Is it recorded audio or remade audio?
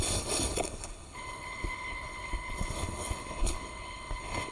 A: remade